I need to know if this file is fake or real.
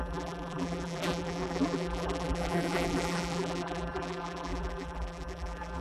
fake